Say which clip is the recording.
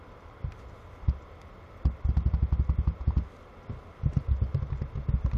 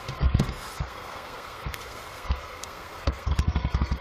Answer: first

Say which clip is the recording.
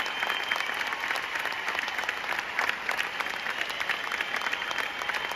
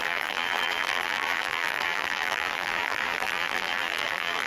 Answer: first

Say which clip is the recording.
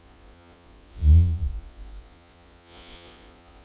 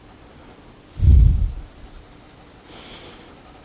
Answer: second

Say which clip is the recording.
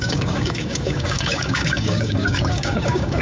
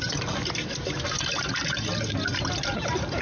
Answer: second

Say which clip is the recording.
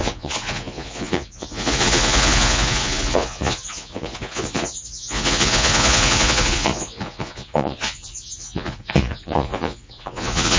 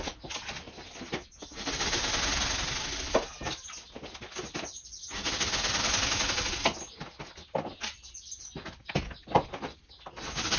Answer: second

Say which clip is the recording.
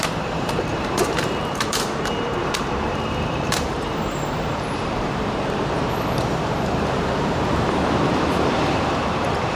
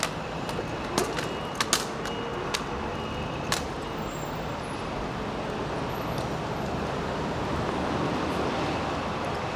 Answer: second